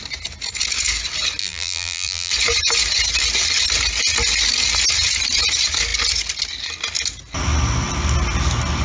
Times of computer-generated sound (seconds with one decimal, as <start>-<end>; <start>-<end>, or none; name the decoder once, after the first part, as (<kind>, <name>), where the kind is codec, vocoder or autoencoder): 1.4-2.3 (vocoder, BigVGAN v2)